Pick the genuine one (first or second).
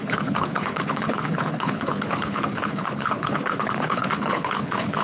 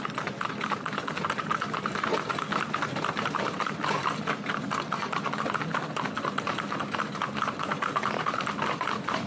second